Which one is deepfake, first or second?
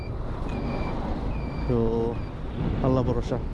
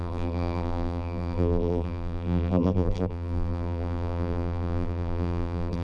second